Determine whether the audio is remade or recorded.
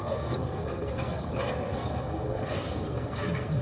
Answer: remade